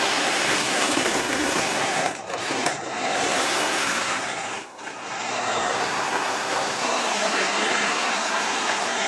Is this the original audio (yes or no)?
no